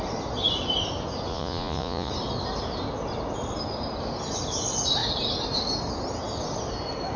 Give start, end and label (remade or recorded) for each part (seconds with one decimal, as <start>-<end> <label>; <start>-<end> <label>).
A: 0.0-1.3 recorded; 1.3-2.1 remade; 2.1-7.2 recorded